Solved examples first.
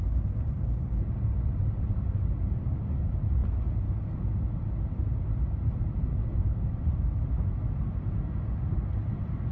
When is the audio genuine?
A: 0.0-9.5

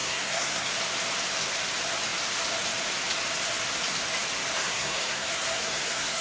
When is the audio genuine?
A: 0.7-4.6